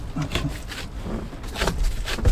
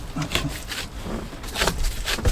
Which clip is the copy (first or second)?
second